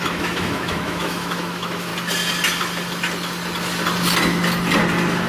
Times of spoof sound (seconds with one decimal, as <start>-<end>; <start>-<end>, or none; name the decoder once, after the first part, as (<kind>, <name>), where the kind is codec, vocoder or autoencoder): 0.0-1.9 (autoencoder, DAC-VAE)